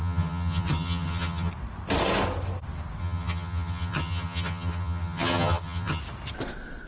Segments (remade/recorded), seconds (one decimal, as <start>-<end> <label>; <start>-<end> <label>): 0.0-1.5 remade; 1.5-3.0 recorded; 3.0-6.0 remade; 6.0-6.9 recorded